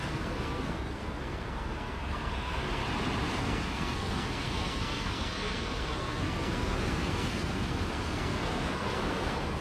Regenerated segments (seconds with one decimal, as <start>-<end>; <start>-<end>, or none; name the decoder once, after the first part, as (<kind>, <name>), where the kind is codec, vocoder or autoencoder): 0.0-2.8 (codec, SNAC); 3.4-9.6